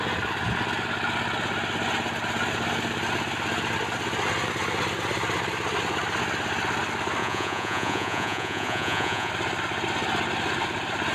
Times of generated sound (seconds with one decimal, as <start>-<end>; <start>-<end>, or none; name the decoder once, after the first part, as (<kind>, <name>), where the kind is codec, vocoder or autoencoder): 7.2-9.3 (vocoder, Vocos)